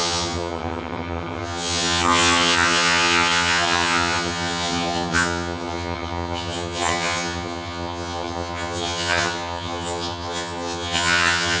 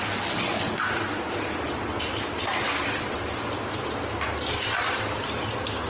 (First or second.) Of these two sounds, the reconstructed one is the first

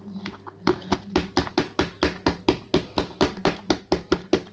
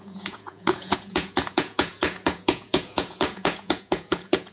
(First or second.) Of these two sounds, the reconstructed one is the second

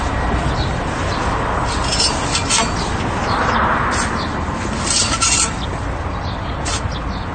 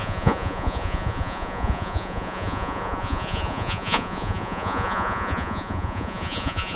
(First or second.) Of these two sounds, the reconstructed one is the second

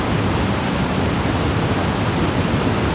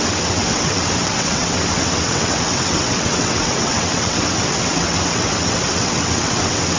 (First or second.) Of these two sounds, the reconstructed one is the second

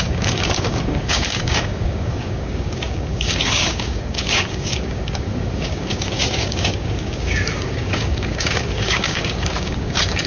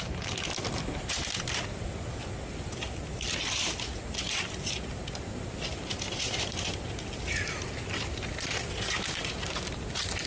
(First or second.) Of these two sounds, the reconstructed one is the first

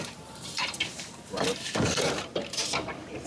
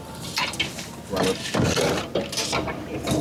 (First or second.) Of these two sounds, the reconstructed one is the first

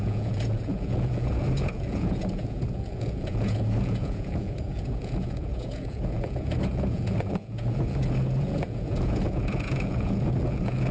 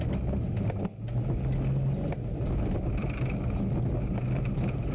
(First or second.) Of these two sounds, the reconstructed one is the first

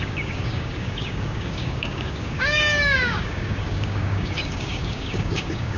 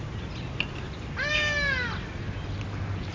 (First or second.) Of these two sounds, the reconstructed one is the first